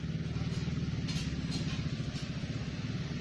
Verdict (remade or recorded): recorded